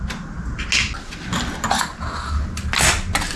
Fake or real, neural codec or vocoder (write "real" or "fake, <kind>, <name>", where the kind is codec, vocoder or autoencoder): real